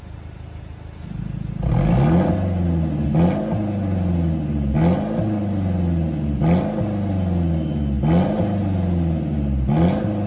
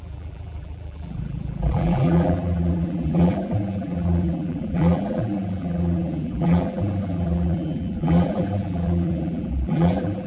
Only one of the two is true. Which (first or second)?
first